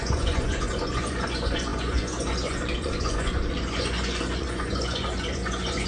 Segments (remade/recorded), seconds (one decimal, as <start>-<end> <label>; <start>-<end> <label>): 0.0-5.9 remade